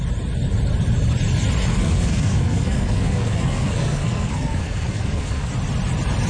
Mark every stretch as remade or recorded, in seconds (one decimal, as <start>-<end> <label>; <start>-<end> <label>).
0.0-1.7 recorded; 1.7-5.5 remade; 5.5-6.3 recorded